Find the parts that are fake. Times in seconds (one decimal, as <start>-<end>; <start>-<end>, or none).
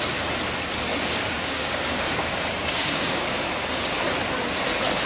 0.9-4.0